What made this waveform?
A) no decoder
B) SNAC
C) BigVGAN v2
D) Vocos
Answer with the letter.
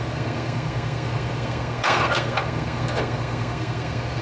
B